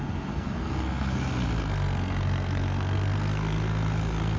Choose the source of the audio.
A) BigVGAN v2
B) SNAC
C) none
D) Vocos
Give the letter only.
B